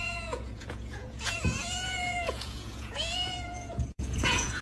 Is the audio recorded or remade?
remade